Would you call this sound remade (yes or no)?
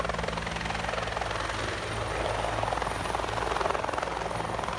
no